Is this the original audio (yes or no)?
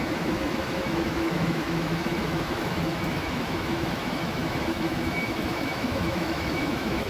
no